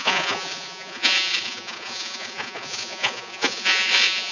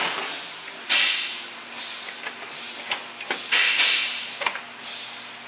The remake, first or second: first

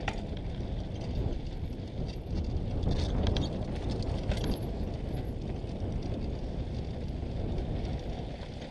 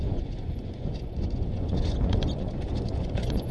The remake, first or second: second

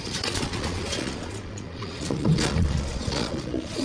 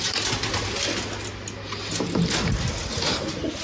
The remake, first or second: first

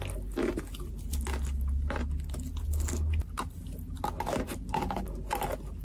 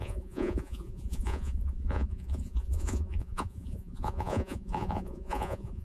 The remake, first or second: second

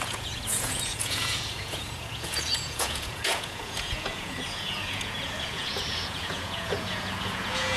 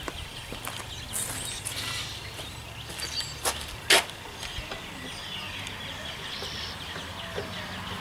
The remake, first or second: first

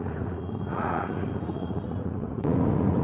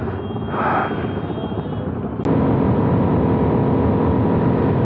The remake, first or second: first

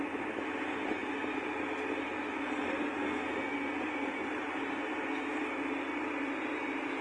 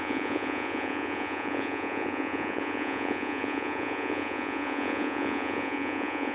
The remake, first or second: second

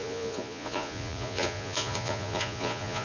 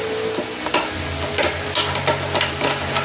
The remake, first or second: first